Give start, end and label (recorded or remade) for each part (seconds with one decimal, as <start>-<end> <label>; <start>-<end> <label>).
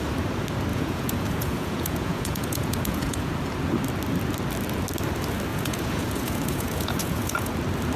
0.0-0.7 recorded; 0.7-3.3 remade; 3.3-5.5 recorded; 5.5-7.5 remade; 7.5-8.0 recorded